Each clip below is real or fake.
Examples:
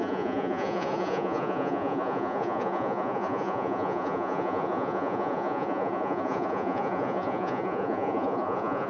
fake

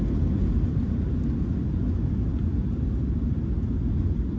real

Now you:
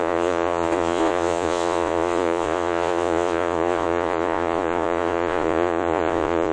fake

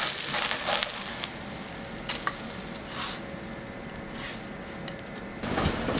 real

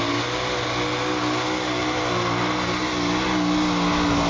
real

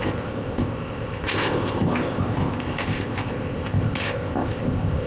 fake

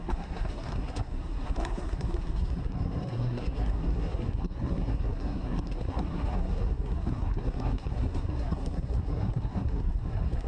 fake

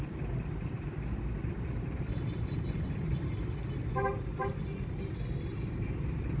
real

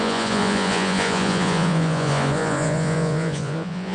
fake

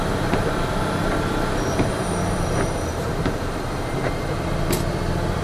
fake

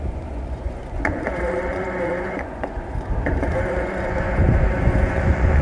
fake